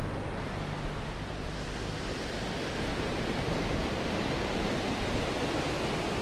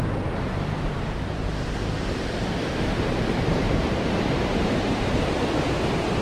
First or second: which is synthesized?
second